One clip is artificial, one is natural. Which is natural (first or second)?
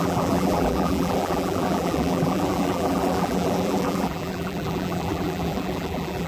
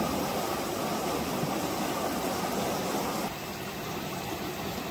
second